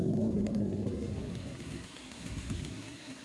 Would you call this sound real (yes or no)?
no